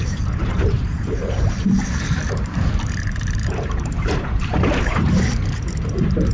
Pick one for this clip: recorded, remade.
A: remade